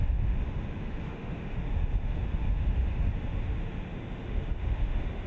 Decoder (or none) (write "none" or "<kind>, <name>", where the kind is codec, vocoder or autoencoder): autoencoder, DAC-VAE